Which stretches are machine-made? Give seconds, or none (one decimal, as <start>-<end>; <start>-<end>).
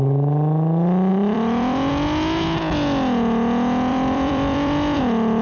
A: 1.1-1.9; 3.9-5.0